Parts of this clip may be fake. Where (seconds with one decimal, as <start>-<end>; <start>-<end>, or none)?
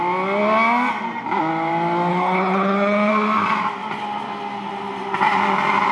2.1-3.1